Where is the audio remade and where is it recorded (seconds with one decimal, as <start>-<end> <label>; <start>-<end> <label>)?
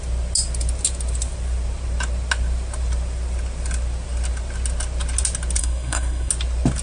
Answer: 0.0-5.6 recorded; 5.6-6.3 remade; 6.3-6.8 recorded